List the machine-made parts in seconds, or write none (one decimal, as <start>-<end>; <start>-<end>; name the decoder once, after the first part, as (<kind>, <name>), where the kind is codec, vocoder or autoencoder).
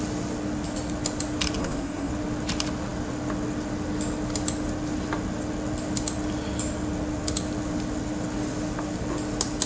1.6-2.1 (codec, SNAC)